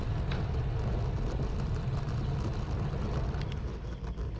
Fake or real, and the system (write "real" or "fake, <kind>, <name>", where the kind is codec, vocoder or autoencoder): real